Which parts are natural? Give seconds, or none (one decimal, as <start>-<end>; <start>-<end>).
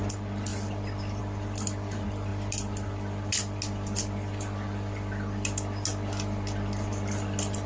0.0-7.7